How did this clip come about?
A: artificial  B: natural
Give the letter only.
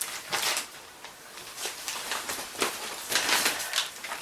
A